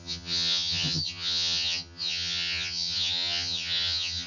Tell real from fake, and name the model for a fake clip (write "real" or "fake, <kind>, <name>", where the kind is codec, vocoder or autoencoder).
fake, vocoder, HiFi-GAN